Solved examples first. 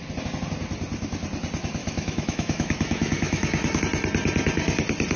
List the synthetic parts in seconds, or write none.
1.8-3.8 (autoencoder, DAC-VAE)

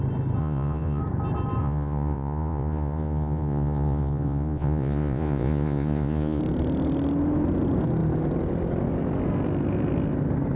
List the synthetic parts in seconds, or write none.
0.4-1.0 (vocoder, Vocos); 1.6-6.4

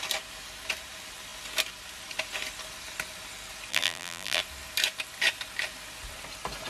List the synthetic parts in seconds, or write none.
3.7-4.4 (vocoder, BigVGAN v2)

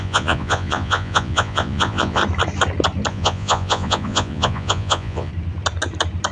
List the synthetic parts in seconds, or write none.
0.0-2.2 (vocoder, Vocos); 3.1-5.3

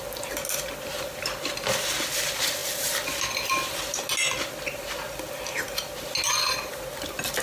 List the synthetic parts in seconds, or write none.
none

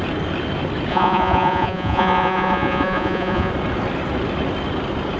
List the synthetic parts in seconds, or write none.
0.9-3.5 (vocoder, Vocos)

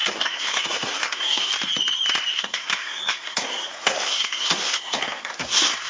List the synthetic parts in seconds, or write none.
0.0-1.5 (codec, SNAC); 2.3-5.9